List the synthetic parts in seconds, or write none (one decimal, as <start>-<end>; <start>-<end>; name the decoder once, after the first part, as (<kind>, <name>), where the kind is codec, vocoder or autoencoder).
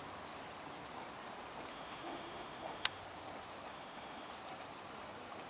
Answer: 1.7-3.0 (autoencoder, DAC-VAE); 3.7-4.3